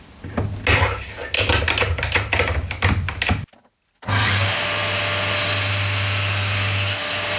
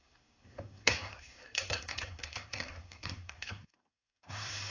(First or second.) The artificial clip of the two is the second